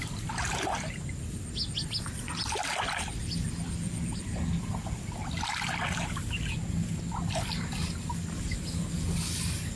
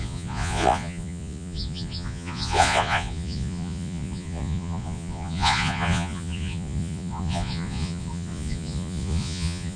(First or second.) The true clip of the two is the first